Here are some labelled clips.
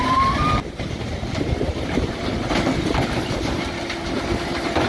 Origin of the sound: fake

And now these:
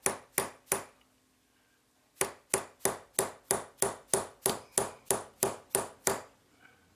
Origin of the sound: real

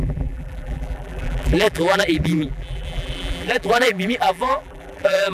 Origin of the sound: fake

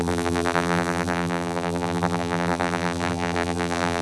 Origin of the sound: fake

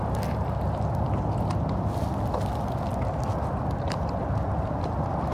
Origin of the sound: real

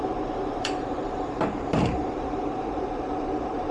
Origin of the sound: fake